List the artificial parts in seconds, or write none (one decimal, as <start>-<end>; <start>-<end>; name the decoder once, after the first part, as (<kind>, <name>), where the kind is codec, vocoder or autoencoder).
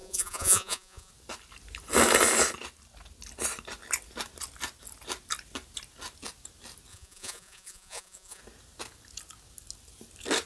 0.0-1.1 (vocoder, Vocos); 6.9-8.4